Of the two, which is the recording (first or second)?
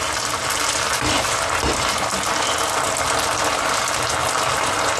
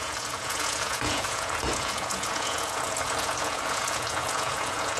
first